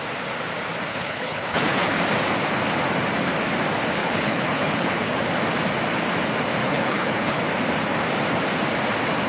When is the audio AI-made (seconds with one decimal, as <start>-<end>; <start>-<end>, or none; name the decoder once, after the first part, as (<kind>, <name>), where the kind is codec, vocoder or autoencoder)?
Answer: 0.9-2.0 (codec, HILCodec); 4.0-5.2; 6.6-7.4